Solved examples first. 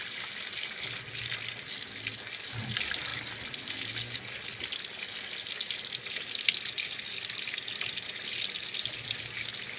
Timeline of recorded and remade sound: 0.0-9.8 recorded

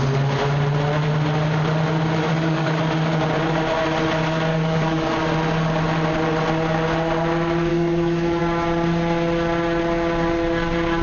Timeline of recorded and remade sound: 0.0-2.3 recorded; 2.3-2.8 remade; 2.8-4.5 recorded; 4.5-5.1 remade; 5.1-7.7 recorded; 7.7-8.4 remade; 8.4-11.0 recorded

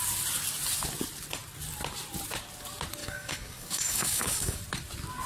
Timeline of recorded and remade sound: 0.0-3.0 recorded; 3.0-4.6 remade; 4.6-5.3 recorded

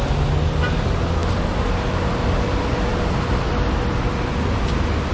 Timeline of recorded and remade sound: 0.0-5.1 recorded

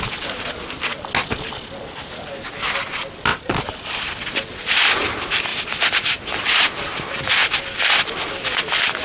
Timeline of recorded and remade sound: 0.0-9.0 recorded